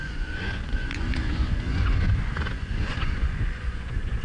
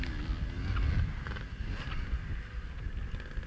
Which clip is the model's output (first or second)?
first